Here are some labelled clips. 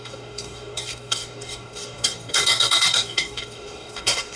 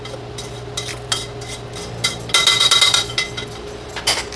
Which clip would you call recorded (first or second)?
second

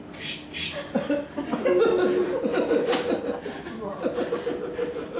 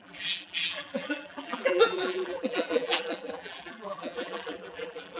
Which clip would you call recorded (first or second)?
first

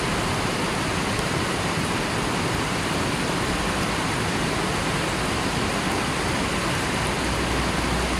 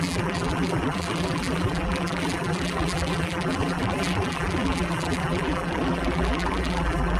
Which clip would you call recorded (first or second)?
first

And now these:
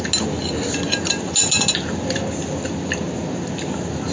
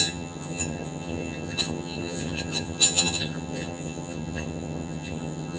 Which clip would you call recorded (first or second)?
first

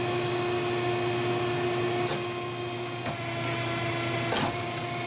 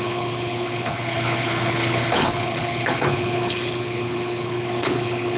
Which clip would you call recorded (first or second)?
first